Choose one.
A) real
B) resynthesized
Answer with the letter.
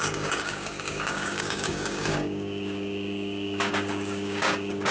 B